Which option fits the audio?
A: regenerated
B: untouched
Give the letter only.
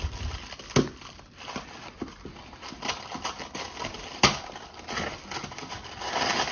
B